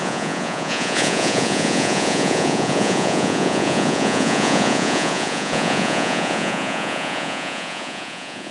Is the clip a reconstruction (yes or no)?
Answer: yes